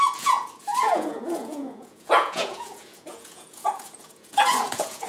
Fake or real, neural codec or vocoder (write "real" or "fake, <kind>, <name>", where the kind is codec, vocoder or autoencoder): fake, vocoder, Vocos